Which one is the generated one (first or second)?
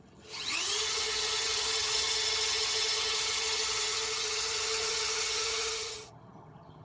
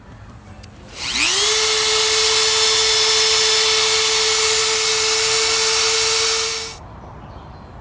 first